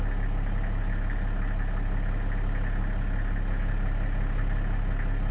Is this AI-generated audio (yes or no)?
no